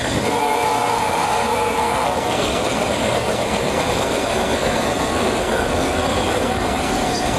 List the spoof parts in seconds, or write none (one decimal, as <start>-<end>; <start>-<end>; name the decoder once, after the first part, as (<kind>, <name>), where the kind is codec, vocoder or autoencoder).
0.0-7.4 (codec, SNAC)